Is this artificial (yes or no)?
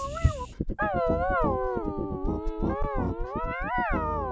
no